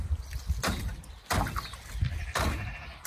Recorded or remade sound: recorded